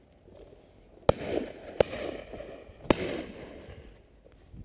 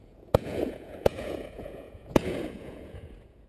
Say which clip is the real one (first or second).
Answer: first